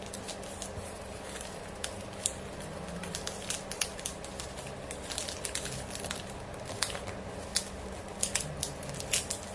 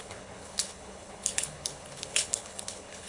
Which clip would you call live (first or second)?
first